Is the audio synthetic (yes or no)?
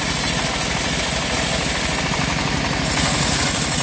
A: no